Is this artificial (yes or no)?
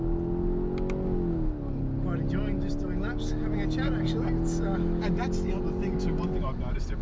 no